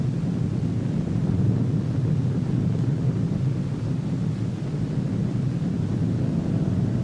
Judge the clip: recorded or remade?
recorded